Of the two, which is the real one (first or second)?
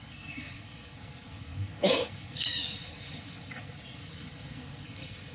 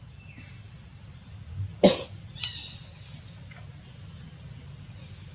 second